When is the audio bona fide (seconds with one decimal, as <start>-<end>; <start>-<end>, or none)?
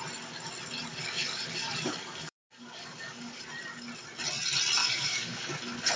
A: 0.0-0.9; 3.4-4.8; 5.6-6.0